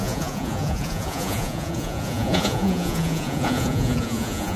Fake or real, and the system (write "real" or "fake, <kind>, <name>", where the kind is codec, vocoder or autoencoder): fake, vocoder, Vocos